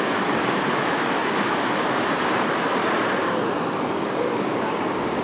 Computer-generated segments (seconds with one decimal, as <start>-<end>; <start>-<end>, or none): 0.0-2.8; 3.9-5.2